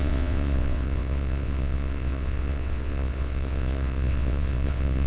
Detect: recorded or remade remade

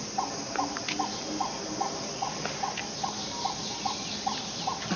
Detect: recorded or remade recorded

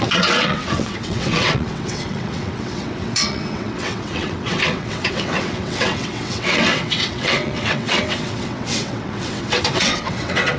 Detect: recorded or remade remade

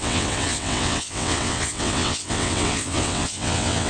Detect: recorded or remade remade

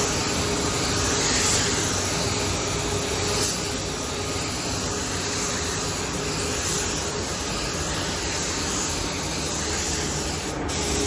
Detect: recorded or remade recorded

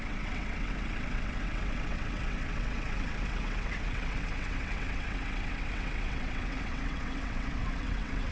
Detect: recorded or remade remade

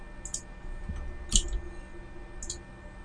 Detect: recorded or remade recorded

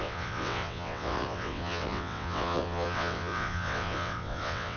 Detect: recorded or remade remade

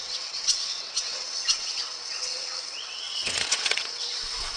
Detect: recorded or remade remade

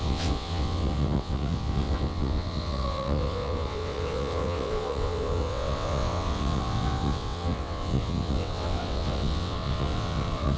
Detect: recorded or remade remade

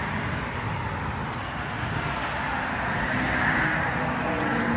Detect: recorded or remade recorded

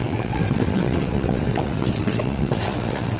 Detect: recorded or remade remade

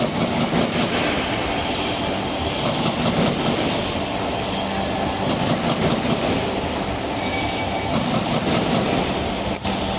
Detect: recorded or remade recorded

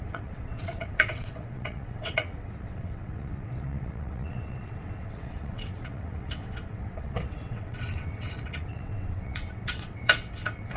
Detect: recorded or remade remade